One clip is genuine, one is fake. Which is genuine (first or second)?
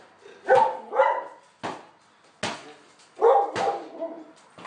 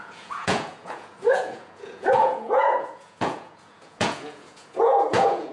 first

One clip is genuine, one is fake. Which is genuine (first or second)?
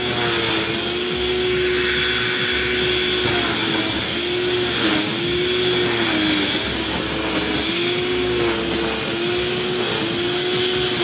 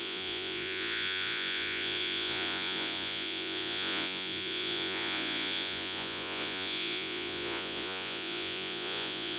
first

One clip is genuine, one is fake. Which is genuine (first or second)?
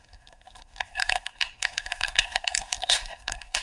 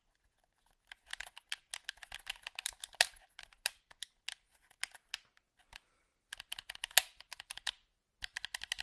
second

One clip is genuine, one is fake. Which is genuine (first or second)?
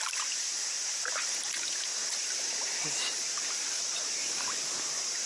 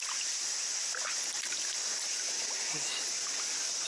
second